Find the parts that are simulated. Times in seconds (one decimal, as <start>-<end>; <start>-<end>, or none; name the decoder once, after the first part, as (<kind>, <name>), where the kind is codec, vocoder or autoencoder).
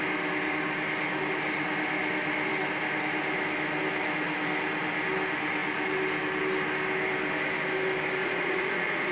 8.2-9.1 (vocoder, Vocos)